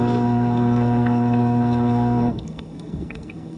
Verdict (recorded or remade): remade